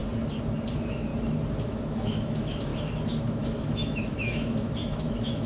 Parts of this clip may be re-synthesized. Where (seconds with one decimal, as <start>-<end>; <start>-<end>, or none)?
0.7-1.1; 1.6-2.7; 3.3-5.5